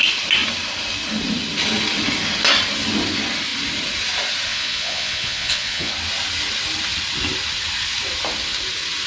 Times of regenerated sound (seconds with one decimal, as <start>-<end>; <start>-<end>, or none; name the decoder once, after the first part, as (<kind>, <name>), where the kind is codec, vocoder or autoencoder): 4.5-5.9 (vocoder, Vocos)